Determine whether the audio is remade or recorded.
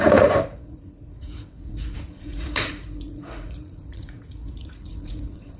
remade